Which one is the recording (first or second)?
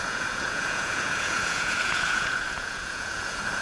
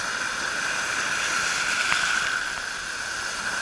second